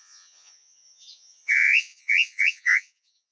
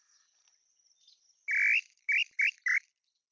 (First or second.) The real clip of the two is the second